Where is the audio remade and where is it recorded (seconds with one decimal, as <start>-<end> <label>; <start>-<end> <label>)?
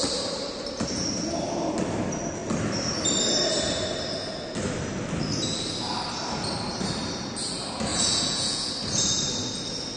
0.0-7.9 recorded; 7.9-8.7 remade; 8.7-10.0 recorded